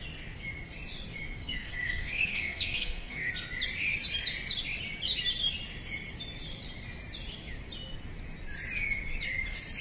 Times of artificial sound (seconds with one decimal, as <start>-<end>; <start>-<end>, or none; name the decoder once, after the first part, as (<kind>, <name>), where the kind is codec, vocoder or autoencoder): 1.4-3.3 (codec, SNAC)